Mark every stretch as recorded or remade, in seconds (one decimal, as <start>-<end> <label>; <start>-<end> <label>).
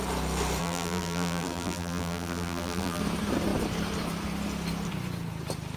0.0-0.6 recorded; 0.6-3.0 remade; 3.0-5.8 recorded